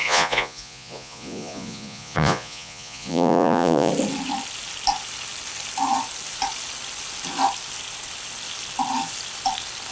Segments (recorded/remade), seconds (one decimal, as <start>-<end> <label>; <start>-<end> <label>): 0.0-3.9 remade; 3.9-9.9 recorded